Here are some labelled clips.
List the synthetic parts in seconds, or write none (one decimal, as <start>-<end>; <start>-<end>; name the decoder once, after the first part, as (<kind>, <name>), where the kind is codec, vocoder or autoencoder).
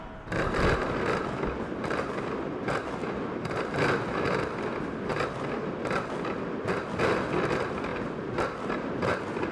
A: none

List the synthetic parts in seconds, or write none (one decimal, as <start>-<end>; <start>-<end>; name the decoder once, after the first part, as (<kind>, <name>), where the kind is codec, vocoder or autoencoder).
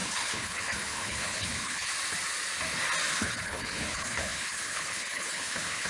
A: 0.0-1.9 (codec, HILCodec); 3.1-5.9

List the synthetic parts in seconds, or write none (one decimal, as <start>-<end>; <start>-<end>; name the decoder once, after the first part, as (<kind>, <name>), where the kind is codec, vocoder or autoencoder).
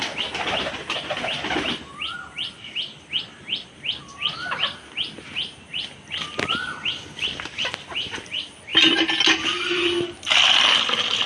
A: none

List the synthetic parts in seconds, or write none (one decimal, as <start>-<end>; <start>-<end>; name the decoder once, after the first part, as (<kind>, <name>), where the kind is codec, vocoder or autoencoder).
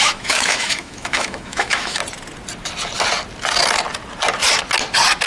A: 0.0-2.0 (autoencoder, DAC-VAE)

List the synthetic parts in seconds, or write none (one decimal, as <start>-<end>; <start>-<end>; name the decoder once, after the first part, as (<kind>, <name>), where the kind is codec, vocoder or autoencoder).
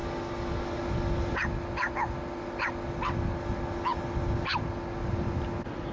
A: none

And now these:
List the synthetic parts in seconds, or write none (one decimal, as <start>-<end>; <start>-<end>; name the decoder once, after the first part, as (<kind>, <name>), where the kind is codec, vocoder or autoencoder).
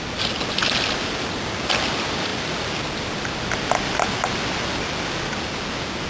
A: none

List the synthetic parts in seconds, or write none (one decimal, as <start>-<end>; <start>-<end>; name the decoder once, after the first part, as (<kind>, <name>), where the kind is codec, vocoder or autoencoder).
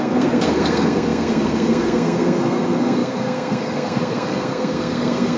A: 0.0-5.4 (codec, SNAC)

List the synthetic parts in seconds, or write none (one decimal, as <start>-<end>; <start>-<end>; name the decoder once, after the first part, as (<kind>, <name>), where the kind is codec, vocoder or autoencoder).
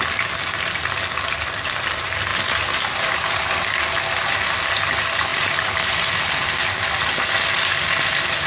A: 2.3-3.4 (vocoder, BigVGAN v2); 5.3-5.9